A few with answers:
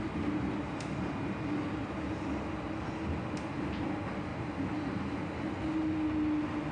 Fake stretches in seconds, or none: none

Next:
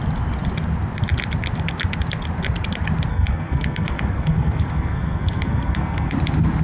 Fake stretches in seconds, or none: 3.1-6.1 (codec, SNAC)

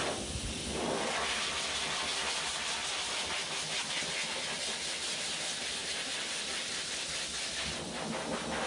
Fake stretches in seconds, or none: none

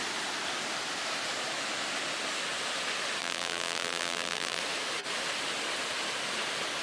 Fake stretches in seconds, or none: 3.2-4.6 (vocoder, BigVGAN v2)

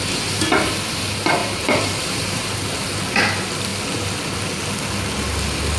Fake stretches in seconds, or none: 1.4-3.0 (vocoder, BigVGAN v2)

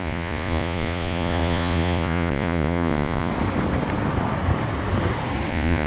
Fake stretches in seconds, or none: 0.0-3.3 (vocoder, Vocos); 5.5-5.9

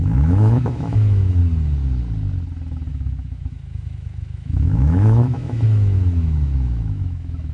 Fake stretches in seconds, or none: 0.0-1.4 (autoencoder, DAC-VAE); 2.9-7.5